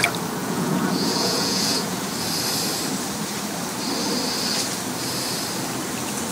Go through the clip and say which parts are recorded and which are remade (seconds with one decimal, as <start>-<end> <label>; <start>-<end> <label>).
0.0-0.4 recorded; 0.4-2.0 remade; 2.0-6.3 recorded